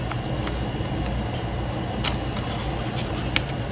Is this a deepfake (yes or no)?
no